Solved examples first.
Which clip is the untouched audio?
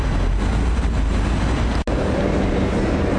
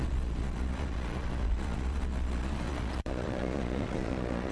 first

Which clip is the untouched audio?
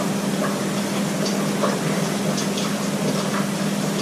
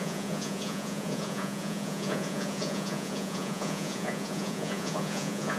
first